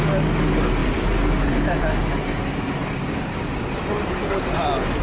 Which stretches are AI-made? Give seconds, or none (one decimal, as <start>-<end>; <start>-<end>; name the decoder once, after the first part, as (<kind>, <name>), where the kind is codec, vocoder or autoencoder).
0.8-1.8 (vocoder, BigVGAN v2); 2.8-4.5